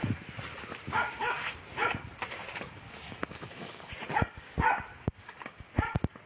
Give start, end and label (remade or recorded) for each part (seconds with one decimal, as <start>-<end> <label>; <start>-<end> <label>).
0.0-0.9 recorded; 0.9-1.5 remade; 1.5-2.4 recorded; 2.4-3.9 remade; 3.9-4.9 recorded; 4.9-5.7 remade; 5.7-6.3 recorded

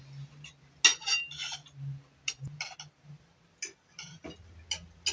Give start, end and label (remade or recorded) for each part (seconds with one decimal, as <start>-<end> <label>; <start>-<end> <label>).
0.0-5.1 recorded